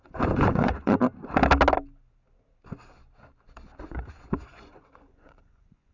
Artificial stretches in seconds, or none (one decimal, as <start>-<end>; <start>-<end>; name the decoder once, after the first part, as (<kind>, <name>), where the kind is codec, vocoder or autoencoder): 0.0-1.0 (vocoder, Vocos); 3.8-5.9